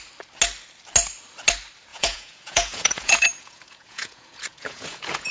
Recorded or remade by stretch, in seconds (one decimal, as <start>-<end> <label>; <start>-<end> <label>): 0.0-1.9 recorded; 1.9-5.3 remade